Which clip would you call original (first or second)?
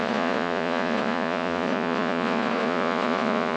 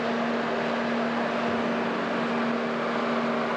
second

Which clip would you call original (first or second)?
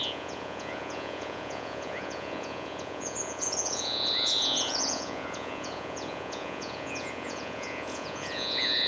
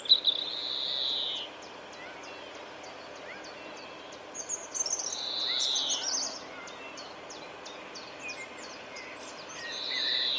second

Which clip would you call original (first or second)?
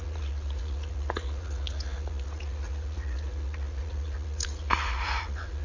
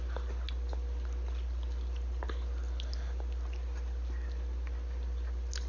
second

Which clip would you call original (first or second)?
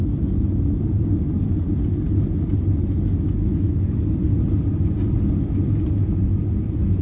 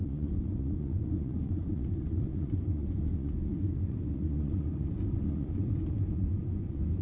first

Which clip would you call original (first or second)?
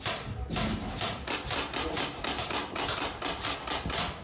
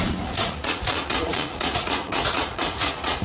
first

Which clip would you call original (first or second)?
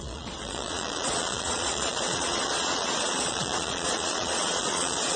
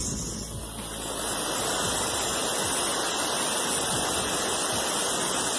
second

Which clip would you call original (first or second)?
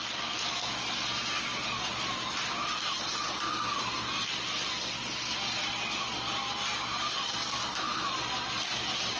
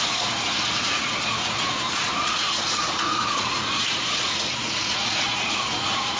first